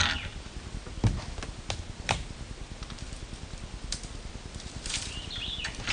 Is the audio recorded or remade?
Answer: recorded